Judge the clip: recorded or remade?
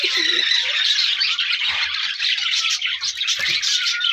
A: remade